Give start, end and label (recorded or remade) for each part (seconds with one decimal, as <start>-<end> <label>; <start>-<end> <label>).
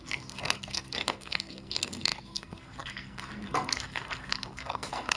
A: 0.0-5.2 remade